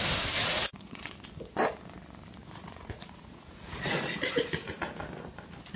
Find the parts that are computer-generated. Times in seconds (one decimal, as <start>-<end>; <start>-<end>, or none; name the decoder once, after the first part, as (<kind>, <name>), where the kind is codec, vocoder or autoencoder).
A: 0.4-1.0 (vocoder, Vocos); 2.4-4.0